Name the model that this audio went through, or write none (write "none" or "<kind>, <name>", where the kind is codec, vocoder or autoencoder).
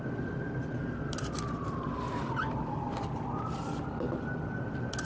none